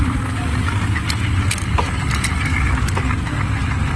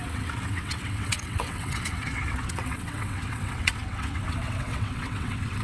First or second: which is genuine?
first